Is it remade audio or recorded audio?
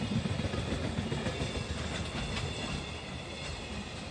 recorded